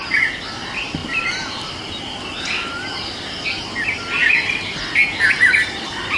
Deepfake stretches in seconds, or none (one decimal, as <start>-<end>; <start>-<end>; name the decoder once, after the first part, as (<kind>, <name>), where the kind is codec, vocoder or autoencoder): none